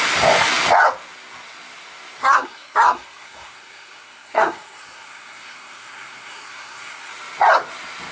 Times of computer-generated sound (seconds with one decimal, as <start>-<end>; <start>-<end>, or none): 2.2-7.1